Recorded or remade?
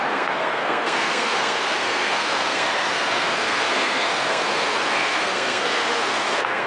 remade